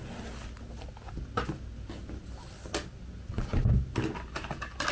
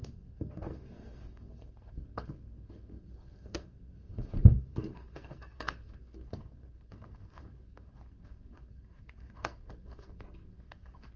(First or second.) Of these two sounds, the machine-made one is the second